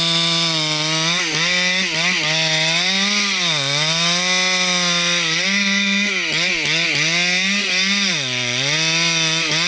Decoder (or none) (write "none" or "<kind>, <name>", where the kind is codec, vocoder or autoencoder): none